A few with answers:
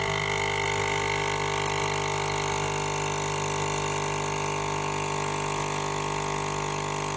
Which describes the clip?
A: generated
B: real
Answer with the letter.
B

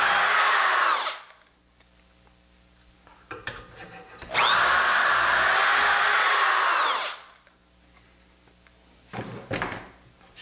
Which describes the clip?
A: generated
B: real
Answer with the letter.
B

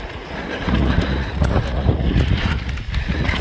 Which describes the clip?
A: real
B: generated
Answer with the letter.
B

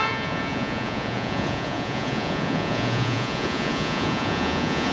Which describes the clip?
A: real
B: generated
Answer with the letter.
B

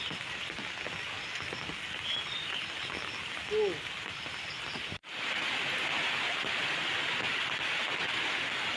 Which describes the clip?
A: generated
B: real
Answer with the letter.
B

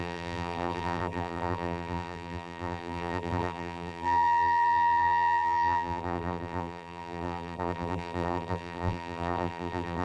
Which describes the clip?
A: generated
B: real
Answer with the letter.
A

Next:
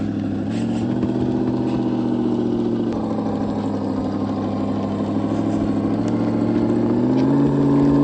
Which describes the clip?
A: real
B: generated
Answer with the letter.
A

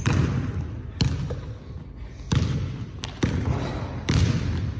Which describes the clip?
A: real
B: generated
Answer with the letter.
A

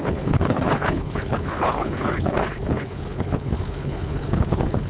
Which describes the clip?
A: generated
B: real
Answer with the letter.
A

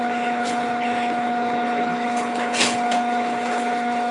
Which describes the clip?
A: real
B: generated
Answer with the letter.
B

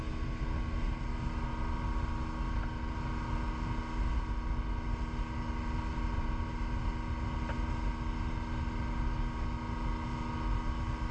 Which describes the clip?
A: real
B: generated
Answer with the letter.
A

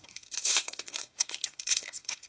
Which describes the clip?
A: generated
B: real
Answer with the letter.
A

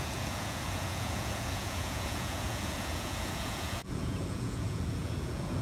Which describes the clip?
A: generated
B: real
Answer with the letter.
A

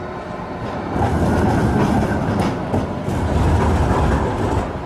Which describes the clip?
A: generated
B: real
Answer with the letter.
B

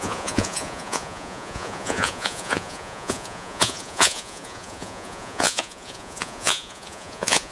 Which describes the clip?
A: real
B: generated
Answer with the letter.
B